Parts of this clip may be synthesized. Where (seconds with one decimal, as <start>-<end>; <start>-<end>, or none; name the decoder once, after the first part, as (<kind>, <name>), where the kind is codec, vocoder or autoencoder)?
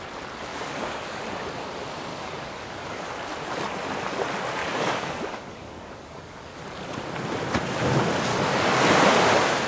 0.5-1.2 (codec, DAC); 2.1-3.0; 4.6-6.6; 8.3-8.9